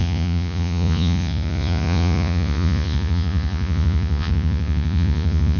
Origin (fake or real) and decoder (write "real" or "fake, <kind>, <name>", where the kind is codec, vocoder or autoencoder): fake, vocoder, Vocos